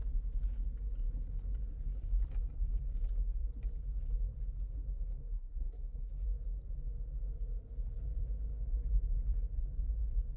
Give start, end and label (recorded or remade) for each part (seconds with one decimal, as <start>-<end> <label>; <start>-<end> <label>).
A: 0.0-5.2 recorded; 5.2-6.1 remade; 6.1-10.4 recorded